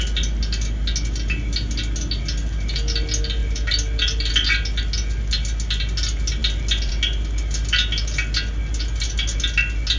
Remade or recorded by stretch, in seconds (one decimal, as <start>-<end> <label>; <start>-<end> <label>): 0.0-2.4 recorded; 2.4-3.0 remade; 3.0-3.4 recorded; 3.4-4.3 remade; 4.3-10.0 recorded